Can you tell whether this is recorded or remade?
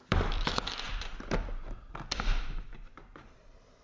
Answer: remade